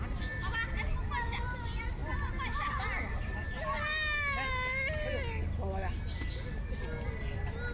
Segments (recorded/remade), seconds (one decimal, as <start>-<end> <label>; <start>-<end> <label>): 0.0-7.7 recorded